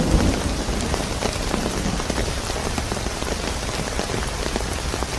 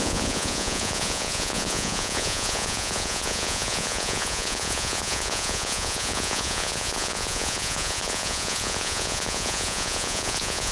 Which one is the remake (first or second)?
second